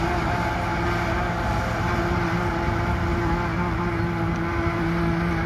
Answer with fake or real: real